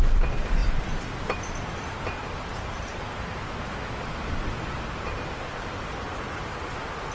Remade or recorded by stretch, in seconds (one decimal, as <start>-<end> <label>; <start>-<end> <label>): 0.0-7.1 recorded